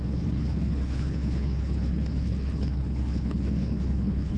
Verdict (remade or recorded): remade